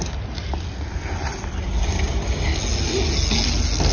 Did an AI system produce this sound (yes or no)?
no